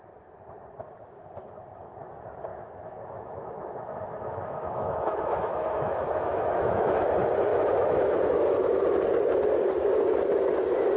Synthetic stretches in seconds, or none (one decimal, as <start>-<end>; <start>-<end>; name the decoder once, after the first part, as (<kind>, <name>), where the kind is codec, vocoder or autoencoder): 2.5-7.1 (autoencoder, DAC-VAE); 7.5-8.2